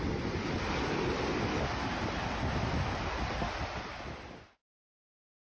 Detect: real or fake real